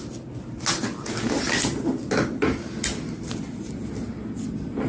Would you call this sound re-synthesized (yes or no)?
no